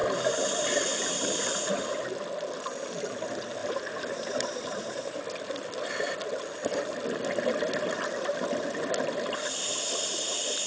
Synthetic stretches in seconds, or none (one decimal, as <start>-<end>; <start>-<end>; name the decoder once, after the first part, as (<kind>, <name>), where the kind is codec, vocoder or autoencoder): 3.6-5.2 (vocoder, BigVGAN v2)